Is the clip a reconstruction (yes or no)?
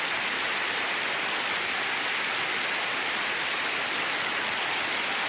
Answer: no